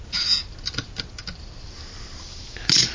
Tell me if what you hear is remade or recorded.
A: recorded